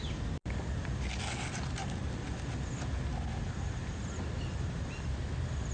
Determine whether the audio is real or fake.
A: real